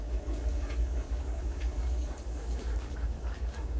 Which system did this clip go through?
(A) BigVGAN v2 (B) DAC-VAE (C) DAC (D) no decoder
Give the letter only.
C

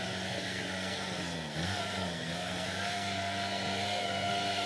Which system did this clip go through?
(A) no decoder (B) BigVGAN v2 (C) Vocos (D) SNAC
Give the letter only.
D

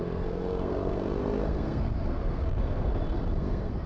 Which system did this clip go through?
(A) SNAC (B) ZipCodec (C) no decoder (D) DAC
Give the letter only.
A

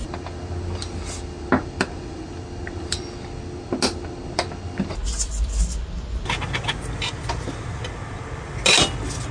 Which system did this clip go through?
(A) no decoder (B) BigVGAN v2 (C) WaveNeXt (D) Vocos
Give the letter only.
A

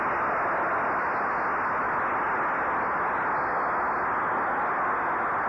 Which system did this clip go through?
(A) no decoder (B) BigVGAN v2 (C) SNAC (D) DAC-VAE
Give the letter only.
A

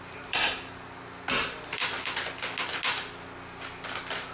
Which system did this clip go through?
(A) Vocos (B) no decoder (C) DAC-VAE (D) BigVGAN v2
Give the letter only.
B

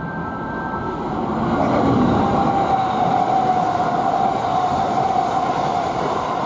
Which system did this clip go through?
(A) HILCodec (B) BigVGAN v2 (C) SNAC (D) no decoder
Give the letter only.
D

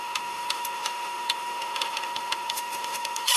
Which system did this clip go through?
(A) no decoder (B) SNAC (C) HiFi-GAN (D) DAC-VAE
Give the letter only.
D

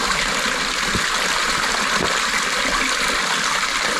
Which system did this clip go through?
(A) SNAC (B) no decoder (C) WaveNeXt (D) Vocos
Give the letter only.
B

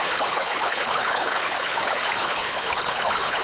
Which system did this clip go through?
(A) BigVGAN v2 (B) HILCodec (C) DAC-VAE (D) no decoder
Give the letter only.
B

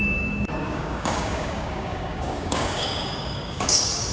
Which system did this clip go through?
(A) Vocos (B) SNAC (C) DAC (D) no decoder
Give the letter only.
C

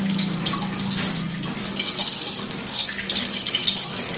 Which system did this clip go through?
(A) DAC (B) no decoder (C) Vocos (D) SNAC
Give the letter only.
A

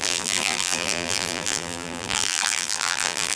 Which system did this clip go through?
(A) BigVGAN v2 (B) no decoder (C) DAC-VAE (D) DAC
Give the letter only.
A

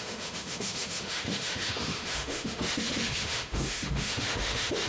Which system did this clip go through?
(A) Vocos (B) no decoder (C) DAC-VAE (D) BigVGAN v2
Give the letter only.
C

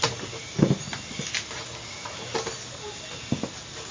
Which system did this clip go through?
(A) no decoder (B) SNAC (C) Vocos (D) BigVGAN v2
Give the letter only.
A